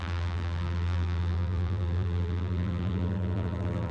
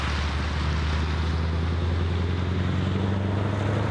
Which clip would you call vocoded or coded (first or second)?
first